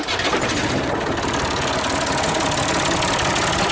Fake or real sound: real